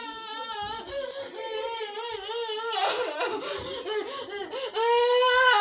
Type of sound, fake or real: real